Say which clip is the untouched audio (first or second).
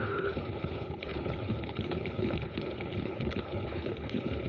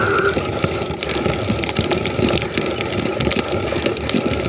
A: second